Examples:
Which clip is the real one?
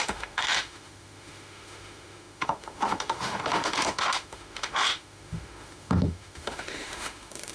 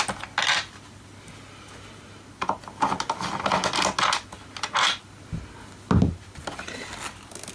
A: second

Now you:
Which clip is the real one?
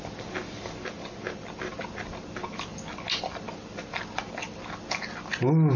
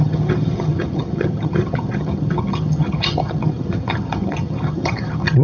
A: first